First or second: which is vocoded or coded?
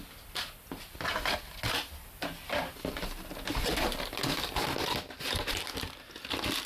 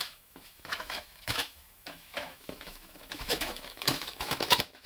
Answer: second